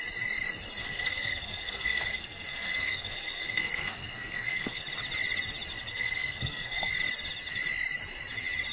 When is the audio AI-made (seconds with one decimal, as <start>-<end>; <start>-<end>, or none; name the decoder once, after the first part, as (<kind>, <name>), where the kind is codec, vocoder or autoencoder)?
0.8-4.8 (codec, SNAC); 5.9-6.9

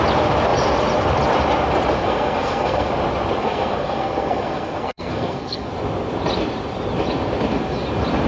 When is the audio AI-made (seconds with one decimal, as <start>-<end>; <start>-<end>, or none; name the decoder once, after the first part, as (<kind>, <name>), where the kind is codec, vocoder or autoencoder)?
2.0-2.9 (codec, SNAC); 3.4-5.7

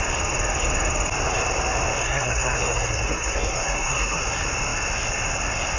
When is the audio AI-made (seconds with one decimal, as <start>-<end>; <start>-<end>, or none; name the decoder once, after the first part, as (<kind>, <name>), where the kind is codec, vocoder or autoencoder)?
2.0-4.2 (codec, SNAC)